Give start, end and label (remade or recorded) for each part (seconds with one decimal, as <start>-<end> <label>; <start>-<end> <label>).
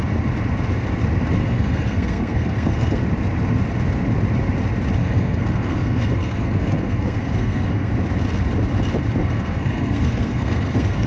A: 0.0-1.4 recorded; 1.4-3.0 remade; 3.0-5.0 recorded; 5.0-7.9 remade; 7.9-9.2 recorded; 9.2-11.1 remade